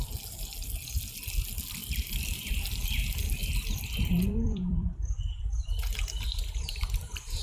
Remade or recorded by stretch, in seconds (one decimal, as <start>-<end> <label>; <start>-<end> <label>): 0.0-1.8 recorded; 1.8-2.5 remade; 2.5-3.4 recorded; 3.4-5.9 remade; 5.9-7.4 recorded